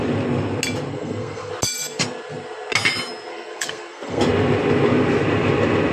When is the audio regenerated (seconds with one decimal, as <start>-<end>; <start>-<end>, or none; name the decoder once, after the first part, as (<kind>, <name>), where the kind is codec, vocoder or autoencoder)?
0.9-1.5 (codec, SNAC); 3.3-4.2